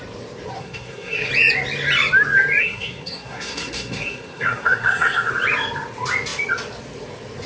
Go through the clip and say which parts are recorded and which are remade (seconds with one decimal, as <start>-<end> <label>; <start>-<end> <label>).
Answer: 0.0-0.6 recorded; 0.6-1.3 remade; 1.3-2.6 recorded; 2.6-5.3 remade; 5.3-7.5 recorded